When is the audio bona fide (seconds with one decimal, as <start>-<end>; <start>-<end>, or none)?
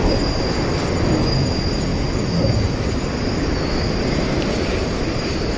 0.0-5.6